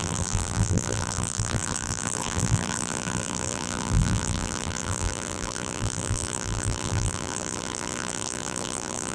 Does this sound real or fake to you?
fake